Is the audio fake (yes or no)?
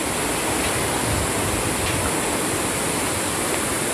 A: no